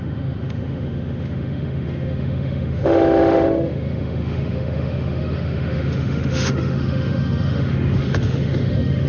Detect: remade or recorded remade